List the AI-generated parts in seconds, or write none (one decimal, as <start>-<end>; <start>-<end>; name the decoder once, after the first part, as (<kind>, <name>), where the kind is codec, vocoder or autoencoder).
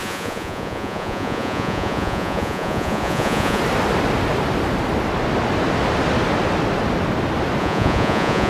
0.0-3.6 (vocoder, Vocos); 7.6-8.5